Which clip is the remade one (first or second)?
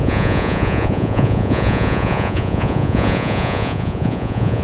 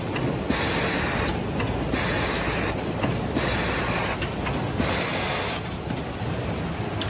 first